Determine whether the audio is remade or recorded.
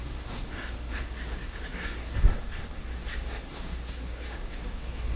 remade